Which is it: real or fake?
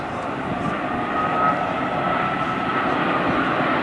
real